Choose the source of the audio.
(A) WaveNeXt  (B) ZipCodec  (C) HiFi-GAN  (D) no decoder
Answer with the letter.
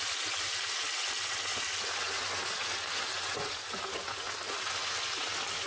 D